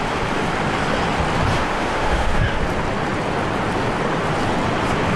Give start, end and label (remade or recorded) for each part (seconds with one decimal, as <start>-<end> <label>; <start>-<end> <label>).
0.0-1.5 recorded; 1.5-2.6 remade; 2.6-5.2 recorded